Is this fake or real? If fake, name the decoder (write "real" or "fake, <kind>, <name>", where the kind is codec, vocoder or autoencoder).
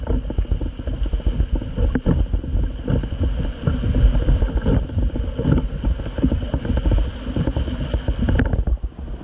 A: real